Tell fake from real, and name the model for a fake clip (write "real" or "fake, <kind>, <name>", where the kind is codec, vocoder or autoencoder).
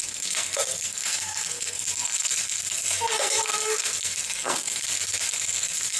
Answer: fake, codec, SNAC